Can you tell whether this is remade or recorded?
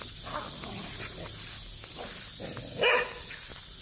recorded